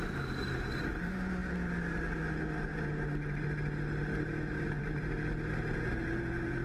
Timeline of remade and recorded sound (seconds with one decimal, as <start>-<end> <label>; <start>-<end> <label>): 0.0-6.6 recorded